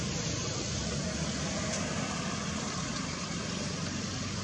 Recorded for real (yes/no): yes